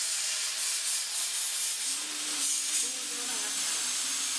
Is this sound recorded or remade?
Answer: recorded